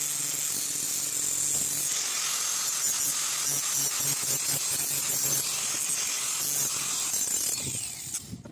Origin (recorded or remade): recorded